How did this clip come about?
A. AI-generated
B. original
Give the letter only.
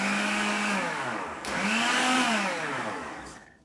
A